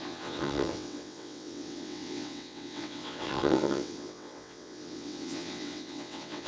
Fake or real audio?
fake